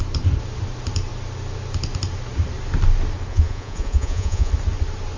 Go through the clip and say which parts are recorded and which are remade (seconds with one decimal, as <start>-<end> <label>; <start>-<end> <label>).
0.0-3.3 recorded; 3.3-4.5 remade; 4.5-5.2 recorded